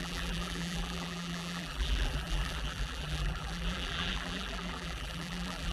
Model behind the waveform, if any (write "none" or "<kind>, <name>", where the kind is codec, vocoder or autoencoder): vocoder, BigVGAN v2